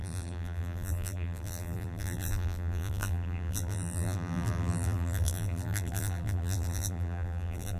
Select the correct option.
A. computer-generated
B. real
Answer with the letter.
A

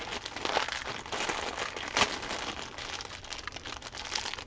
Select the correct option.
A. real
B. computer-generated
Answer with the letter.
A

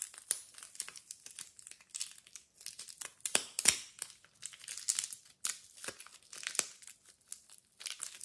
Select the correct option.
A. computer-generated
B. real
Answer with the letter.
B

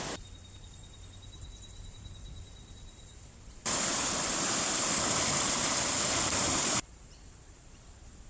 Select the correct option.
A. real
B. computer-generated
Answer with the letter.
B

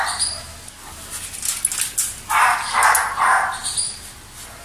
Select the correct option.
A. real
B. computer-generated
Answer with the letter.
A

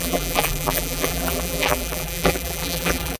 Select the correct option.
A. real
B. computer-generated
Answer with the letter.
B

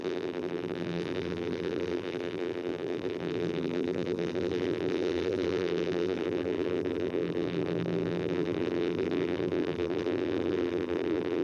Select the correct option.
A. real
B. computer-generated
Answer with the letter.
B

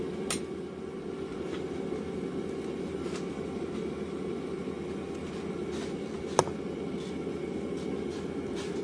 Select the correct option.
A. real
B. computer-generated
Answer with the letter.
A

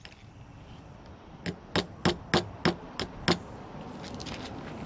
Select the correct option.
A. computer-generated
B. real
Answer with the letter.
B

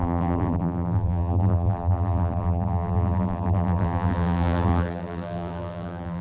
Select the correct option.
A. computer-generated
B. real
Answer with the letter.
A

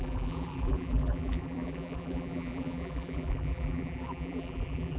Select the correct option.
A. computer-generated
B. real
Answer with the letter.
A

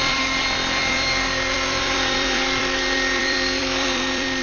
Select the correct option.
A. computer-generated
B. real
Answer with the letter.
A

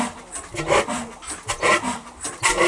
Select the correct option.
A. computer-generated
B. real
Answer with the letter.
B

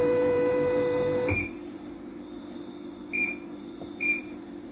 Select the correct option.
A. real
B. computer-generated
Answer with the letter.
B